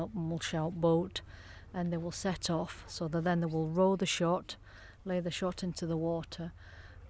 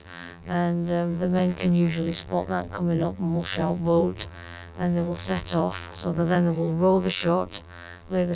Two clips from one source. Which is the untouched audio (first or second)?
first